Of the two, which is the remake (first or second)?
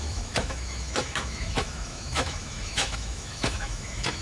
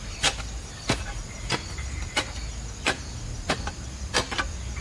first